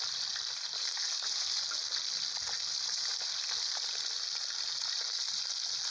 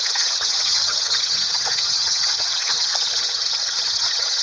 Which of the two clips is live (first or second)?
first